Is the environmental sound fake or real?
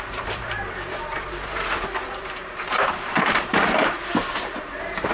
fake